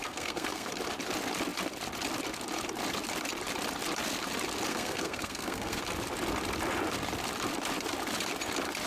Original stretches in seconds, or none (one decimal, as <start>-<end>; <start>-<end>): 0.7-4.7; 5.8-8.9